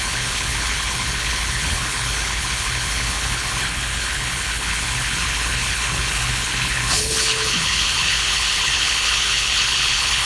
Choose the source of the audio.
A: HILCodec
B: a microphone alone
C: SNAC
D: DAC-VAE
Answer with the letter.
A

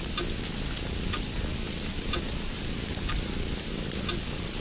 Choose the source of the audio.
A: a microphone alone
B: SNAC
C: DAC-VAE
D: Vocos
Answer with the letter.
A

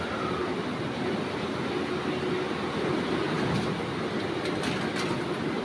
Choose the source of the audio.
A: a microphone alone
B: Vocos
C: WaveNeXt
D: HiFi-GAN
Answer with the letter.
A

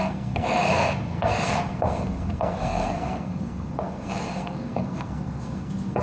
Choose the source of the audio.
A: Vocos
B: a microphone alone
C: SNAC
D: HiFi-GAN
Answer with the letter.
C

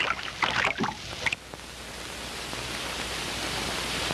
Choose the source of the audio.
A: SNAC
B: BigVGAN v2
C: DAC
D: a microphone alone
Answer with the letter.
D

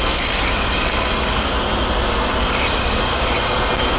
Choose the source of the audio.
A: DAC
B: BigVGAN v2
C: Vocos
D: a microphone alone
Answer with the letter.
D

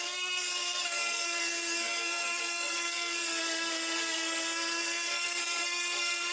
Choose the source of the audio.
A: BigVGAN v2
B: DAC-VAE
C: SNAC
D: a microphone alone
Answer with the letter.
C